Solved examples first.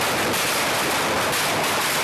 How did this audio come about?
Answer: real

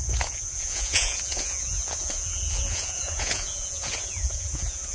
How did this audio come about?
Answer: fake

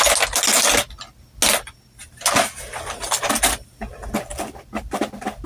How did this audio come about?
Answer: real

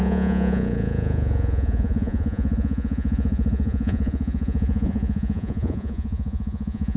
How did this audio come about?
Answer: fake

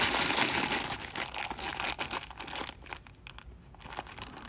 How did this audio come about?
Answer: real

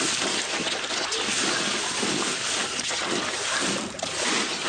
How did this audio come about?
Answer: real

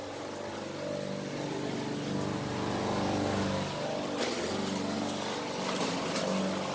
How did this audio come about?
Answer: real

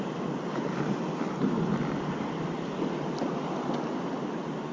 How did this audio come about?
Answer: real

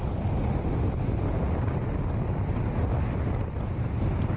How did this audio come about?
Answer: real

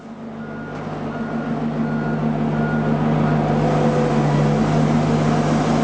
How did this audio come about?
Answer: real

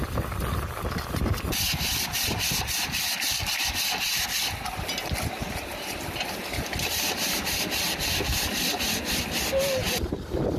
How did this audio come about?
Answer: real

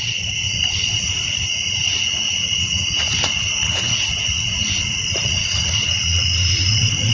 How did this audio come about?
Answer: fake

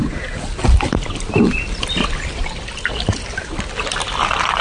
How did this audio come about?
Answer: real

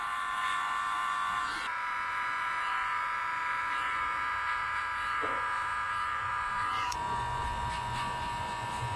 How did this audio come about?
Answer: fake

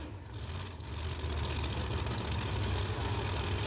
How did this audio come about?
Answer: real